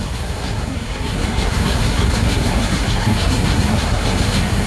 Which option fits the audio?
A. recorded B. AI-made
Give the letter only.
B